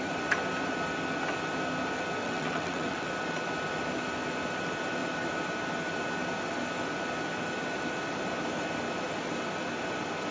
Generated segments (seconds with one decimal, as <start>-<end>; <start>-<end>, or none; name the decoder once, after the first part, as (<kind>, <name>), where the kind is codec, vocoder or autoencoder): 2.2-3.1 (vocoder, WaveNeXt)